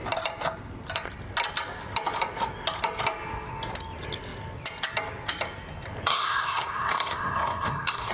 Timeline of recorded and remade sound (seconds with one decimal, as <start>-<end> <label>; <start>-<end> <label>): 0.0-6.1 recorded; 6.1-8.1 remade